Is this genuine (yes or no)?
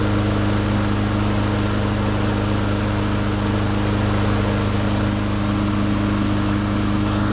yes